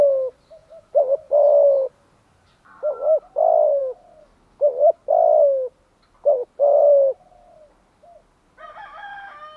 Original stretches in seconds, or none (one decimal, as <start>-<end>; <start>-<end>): 0.0-9.6